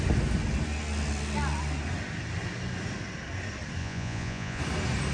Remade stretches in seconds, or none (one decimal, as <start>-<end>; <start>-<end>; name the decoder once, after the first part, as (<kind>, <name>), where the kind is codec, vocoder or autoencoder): 3.8-4.6 (vocoder, Vocos)